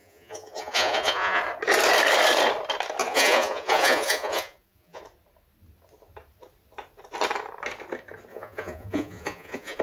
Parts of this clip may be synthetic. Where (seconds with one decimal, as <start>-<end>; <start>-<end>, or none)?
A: 0.0-1.4; 3.0-5.0; 8.3-9.8